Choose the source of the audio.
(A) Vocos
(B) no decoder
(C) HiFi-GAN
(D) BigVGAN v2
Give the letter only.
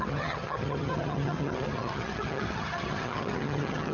C